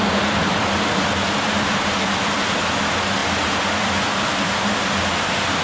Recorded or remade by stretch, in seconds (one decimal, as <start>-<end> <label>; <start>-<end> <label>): 0.0-5.6 recorded